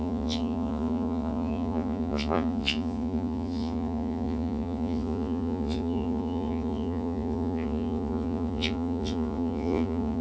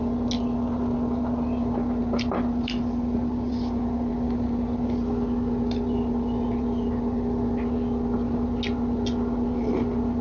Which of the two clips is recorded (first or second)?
second